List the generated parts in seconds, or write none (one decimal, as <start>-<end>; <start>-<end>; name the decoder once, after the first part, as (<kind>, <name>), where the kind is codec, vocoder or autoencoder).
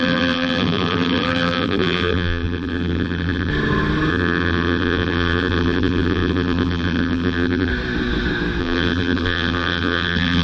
0.0-3.5 (vocoder, BigVGAN v2); 4.1-7.7; 8.6-10.4